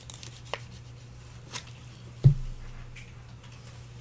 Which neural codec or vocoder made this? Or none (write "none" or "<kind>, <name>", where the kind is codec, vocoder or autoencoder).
none